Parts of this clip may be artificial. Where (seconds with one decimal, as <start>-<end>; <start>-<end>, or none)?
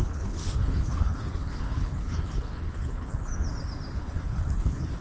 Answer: 0.0-3.3; 4.0-5.0